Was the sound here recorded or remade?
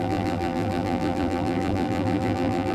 remade